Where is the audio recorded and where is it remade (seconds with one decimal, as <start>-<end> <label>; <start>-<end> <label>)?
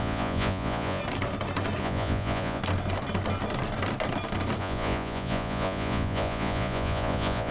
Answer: 0.0-1.0 remade; 1.0-1.8 recorded; 1.8-2.6 remade; 2.6-4.6 recorded; 4.6-7.5 remade